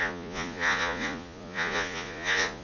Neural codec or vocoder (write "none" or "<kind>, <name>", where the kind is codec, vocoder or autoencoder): vocoder, Vocos